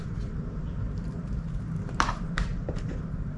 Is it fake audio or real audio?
fake